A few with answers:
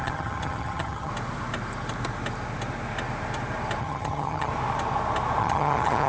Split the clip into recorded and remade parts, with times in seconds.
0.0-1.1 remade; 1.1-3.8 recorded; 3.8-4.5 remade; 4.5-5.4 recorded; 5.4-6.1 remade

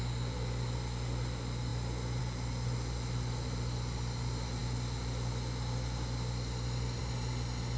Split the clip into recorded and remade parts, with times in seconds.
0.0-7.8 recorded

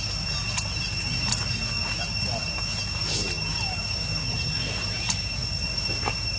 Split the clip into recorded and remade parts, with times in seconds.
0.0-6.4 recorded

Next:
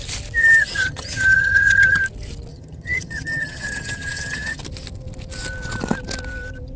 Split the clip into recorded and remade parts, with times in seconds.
0.0-0.4 recorded; 0.4-2.0 remade; 2.0-2.5 recorded; 2.5-4.6 remade; 4.6-6.8 recorded